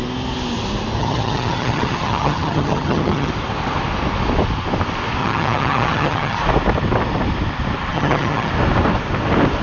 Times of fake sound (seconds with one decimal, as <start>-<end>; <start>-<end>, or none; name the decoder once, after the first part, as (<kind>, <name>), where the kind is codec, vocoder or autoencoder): 1.0-3.3 (vocoder, HiFi-GAN); 5.2-6.4; 7.9-8.5